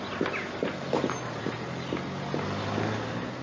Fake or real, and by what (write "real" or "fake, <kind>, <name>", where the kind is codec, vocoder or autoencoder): real